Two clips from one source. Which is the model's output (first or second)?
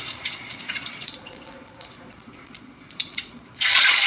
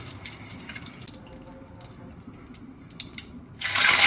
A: first